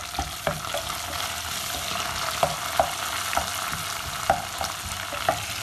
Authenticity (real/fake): real